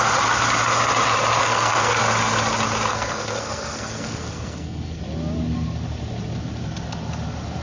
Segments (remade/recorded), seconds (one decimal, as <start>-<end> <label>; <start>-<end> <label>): 0.0-1.4 recorded; 1.4-2.0 remade; 2.0-2.9 recorded; 2.9-5.0 remade; 5.0-7.6 recorded